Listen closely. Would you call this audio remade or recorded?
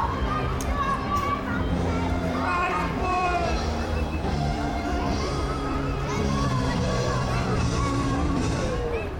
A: remade